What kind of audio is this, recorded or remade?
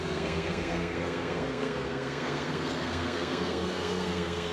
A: remade